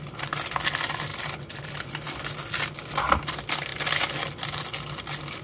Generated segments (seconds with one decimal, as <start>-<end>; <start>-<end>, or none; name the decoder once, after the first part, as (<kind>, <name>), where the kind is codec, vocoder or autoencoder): none